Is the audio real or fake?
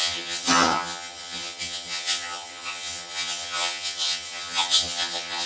fake